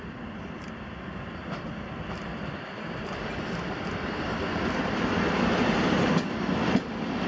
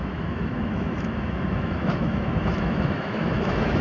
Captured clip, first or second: first